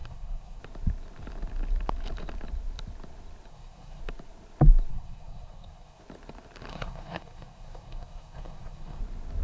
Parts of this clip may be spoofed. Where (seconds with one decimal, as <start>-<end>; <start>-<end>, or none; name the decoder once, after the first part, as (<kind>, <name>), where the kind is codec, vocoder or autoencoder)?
0.0-0.6 (codec, SNAC); 3.5-4.0; 4.9-6.0; 6.7-9.0